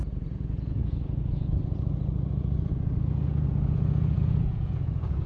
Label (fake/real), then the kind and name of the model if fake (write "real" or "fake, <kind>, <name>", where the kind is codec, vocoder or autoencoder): fake, vocoder, Vocos